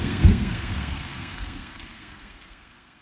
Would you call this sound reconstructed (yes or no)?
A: yes